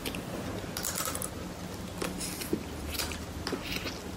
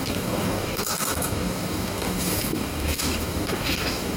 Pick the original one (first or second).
first